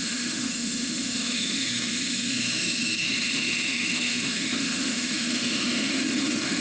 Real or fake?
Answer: fake